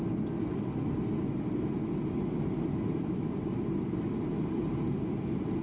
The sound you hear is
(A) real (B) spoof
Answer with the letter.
A